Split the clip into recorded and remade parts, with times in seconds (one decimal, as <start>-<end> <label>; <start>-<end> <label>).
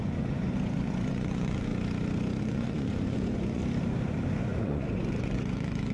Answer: 0.0-1.7 remade; 1.7-2.4 recorded; 2.4-3.6 remade; 3.6-4.4 recorded; 4.4-5.9 remade